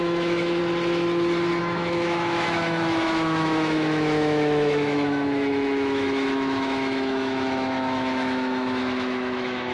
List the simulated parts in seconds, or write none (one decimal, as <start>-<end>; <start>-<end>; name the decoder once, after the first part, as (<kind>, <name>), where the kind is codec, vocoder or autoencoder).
0.0-0.6 (autoencoder, DAC-VAE); 1.6-9.7